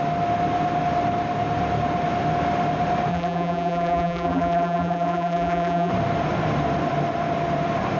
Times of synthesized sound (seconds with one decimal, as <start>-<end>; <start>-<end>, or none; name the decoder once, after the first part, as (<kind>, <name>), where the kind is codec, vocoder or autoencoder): 3.1-5.9 (vocoder, BigVGAN v2)